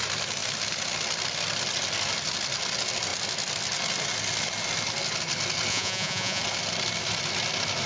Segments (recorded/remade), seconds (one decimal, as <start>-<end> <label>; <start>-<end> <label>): 0.0-5.7 recorded; 5.7-6.4 remade; 6.4-7.9 recorded

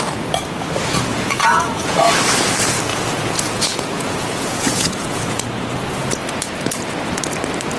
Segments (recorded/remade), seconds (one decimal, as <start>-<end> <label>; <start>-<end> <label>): 0.0-1.1 recorded; 1.1-2.0 remade; 2.0-2.9 recorded; 2.9-5.4 remade; 5.4-6.2 recorded; 6.2-7.2 remade; 7.2-7.8 recorded

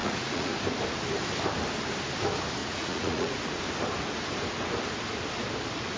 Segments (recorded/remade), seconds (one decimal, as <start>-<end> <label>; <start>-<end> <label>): 0.0-0.5 remade; 0.5-2.6 recorded; 2.6-3.6 remade; 3.6-6.0 recorded

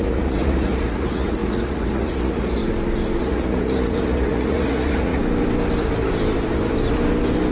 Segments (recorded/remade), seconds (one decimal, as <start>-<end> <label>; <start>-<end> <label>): 0.0-2.6 remade; 2.6-3.2 recorded; 3.2-5.2 remade; 5.2-7.5 recorded

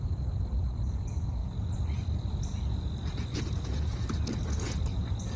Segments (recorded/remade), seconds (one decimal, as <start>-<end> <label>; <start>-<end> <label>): 0.0-5.4 remade

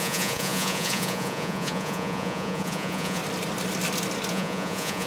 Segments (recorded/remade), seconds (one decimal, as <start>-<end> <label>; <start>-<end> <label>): 0.0-3.2 remade; 3.2-4.3 recorded; 4.3-5.1 remade